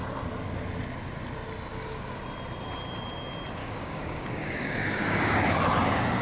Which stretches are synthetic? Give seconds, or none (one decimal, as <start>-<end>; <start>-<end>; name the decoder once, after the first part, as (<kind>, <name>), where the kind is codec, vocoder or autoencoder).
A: 1.7-2.2 (codec, DAC); 3.6-5.4